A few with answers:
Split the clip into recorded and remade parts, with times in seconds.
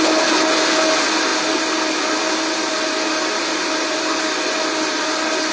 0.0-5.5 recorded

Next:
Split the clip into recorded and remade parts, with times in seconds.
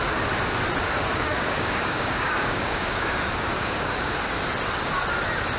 0.0-0.8 recorded; 0.8-4.2 remade; 4.2-5.6 recorded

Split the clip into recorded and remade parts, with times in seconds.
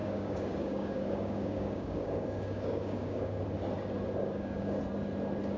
0.0-3.4 remade; 3.4-4.2 recorded; 4.2-4.8 remade; 4.8-5.6 recorded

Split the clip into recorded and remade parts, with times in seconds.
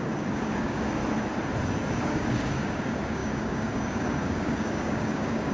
0.0-1.0 remade; 1.0-2.0 recorded; 2.0-5.5 remade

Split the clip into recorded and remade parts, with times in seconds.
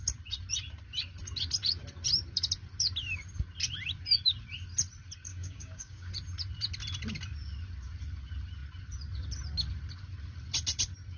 0.0-5.3 recorded; 5.3-6.1 remade; 6.1-11.2 recorded